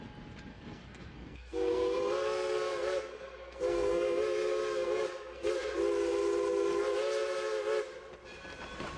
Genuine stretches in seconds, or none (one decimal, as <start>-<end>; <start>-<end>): 0.0-0.5; 5.5-9.0